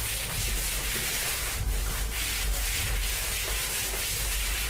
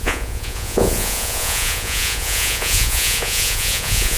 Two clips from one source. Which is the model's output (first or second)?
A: second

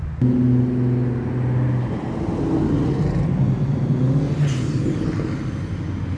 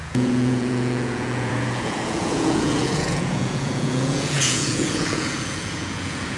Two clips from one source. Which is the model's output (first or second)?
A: second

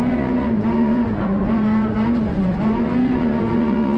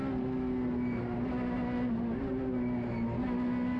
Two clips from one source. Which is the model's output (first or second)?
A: first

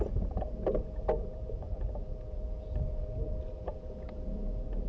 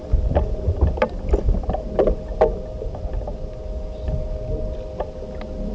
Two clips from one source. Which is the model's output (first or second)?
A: first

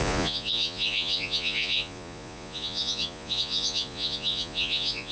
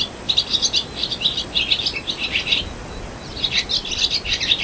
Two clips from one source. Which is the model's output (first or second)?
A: first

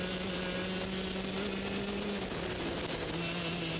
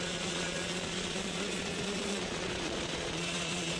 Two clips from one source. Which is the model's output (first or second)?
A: second